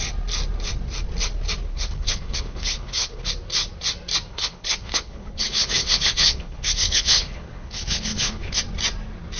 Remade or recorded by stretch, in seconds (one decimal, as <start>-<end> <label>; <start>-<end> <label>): 0.0-1.7 recorded; 1.7-3.3 remade; 3.3-4.3 recorded; 4.3-8.6 remade; 8.6-9.4 recorded

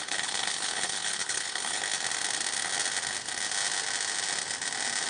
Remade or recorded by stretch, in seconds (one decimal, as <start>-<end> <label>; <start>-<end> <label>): 0.0-1.8 remade; 1.8-5.1 recorded

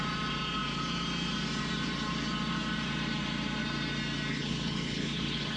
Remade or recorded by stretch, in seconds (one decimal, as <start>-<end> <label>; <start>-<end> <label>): 0.0-4.3 recorded; 4.3-5.6 remade

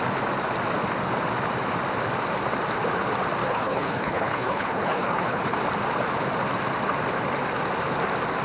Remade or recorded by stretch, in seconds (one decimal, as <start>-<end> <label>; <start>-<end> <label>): 0.0-3.4 recorded; 3.4-5.6 remade; 5.6-8.4 recorded

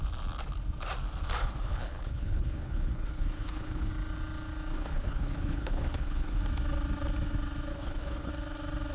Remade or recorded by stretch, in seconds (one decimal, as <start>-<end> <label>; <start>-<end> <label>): 0.0-1.4 recorded; 1.4-3.9 remade; 3.9-4.7 recorded; 4.7-6.4 remade; 6.4-7.7 recorded; 7.7-8.3 remade; 8.3-8.9 recorded